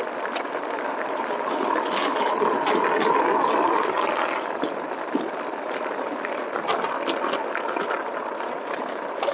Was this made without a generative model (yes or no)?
no